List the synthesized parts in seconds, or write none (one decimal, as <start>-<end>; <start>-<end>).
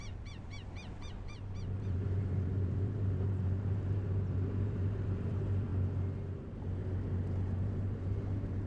0.0-5.7; 7.3-8.7